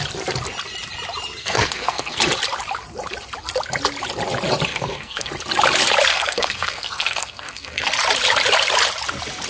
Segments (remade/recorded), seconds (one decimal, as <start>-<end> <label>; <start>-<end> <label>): 0.0-1.4 recorded; 1.4-2.2 remade; 2.2-4.7 recorded; 4.7-5.3 remade; 5.3-6.1 recorded; 6.1-7.9 remade; 7.9-9.5 recorded